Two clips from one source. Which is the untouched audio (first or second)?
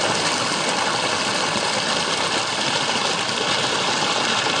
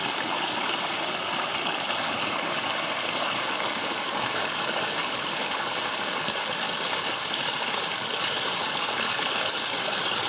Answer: first